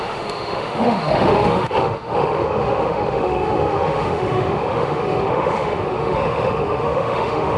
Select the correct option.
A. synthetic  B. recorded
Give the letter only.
A